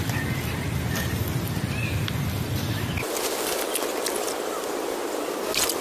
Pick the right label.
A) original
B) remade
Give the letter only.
A